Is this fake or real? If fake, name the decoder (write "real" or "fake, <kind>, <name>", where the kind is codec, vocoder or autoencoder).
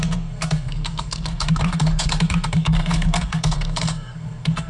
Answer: fake, codec, SNAC